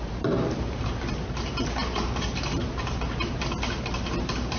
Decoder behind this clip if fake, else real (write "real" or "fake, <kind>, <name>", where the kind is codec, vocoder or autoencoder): fake, vocoder, BigVGAN v2